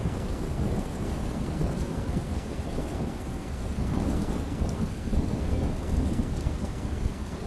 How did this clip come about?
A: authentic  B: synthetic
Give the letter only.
B